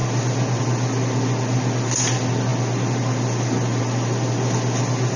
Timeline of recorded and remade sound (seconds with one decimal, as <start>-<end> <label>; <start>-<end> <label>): 0.0-5.2 recorded